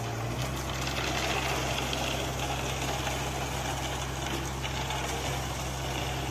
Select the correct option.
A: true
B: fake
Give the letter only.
A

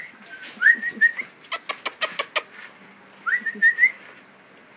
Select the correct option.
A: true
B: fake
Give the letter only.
A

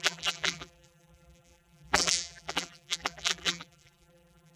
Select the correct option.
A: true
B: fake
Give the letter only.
B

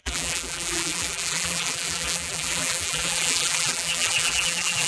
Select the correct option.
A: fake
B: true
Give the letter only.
A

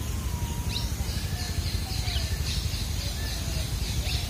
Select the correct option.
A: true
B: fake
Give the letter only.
A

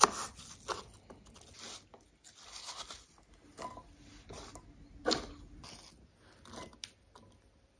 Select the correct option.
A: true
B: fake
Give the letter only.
A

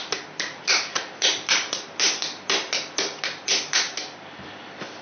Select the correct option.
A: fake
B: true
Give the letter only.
B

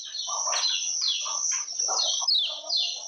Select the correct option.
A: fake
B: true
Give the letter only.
B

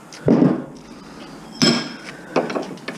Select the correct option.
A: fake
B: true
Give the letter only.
B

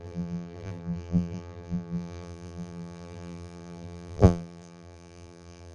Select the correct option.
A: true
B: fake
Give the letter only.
B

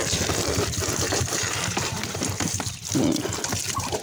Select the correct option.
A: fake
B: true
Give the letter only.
A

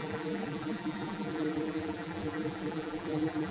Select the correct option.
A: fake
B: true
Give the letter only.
A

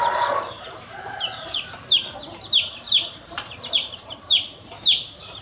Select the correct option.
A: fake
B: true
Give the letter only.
A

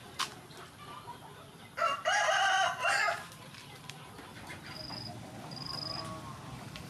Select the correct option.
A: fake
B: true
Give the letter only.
A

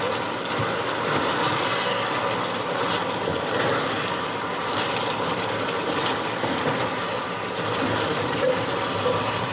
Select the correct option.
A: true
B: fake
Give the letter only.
A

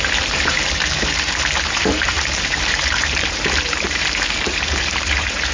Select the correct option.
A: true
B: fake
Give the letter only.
B